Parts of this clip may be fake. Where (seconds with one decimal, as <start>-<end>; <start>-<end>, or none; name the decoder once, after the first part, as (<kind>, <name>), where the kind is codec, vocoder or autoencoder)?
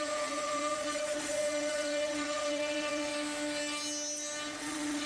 0.0-3.1 (vocoder, Vocos); 4.6-5.1